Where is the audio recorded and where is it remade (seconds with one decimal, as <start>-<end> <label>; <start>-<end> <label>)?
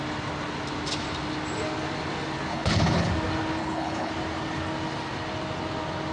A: 0.0-2.5 recorded; 2.5-3.1 remade; 3.1-3.6 recorded; 3.6-4.1 remade; 4.1-6.1 recorded